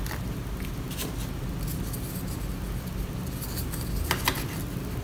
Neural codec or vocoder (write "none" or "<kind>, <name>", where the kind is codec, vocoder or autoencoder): none